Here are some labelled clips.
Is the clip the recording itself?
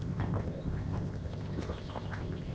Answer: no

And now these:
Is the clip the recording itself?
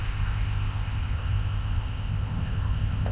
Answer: no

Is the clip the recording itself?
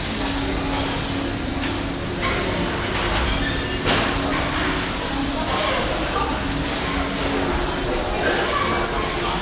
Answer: yes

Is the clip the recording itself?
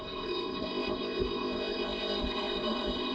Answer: no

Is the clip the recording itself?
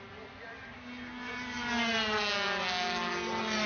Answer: yes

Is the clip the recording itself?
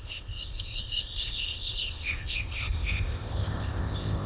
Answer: no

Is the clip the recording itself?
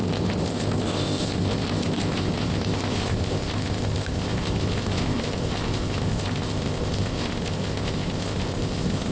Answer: no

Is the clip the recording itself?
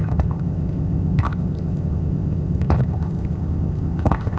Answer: no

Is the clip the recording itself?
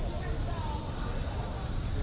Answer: yes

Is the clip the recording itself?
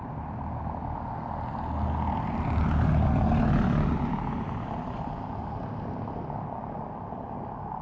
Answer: yes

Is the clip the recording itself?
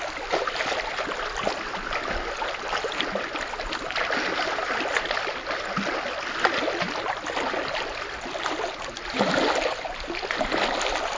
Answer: yes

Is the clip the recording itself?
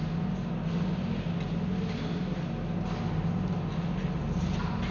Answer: yes